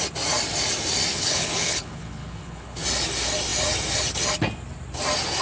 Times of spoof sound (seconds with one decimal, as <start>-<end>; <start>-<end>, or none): 1.1-2.8